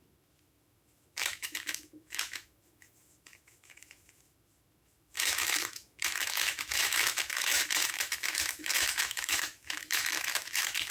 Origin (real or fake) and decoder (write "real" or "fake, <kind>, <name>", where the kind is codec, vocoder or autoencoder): fake, autoencoder, DAC-VAE